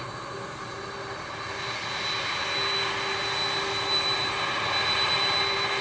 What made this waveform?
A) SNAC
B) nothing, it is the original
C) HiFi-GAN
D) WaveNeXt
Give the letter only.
B